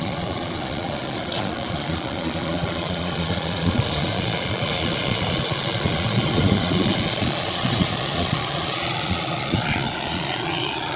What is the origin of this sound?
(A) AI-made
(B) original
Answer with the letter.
A